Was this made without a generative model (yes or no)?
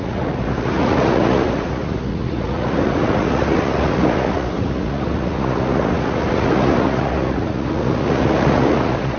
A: no